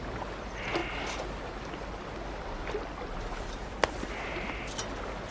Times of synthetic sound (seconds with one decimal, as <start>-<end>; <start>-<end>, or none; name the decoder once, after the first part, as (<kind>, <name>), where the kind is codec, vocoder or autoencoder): none